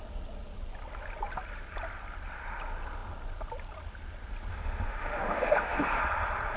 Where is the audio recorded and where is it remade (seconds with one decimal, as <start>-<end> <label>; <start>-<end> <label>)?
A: 0.0-4.5 recorded; 4.5-6.0 remade; 6.0-6.6 recorded